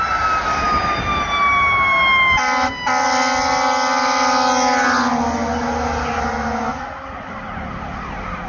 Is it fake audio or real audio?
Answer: real